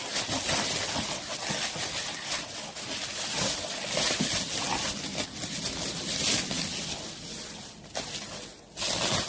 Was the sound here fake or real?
real